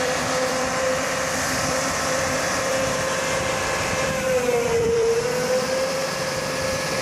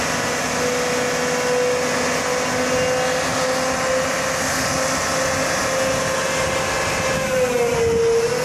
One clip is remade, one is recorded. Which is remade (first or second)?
first